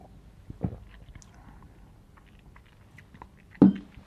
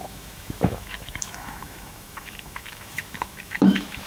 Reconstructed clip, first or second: second